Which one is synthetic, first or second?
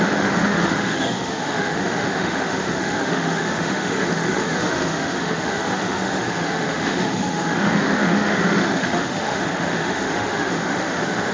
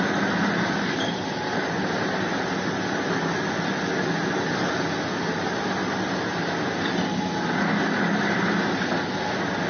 first